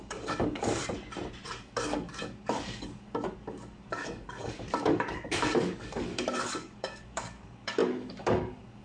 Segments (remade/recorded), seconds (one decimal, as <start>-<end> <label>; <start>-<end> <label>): 0.0-0.8 remade; 0.8-1.5 recorded; 1.5-8.8 remade